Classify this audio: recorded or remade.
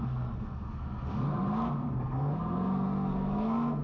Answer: remade